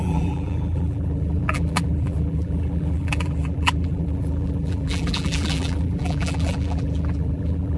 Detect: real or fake fake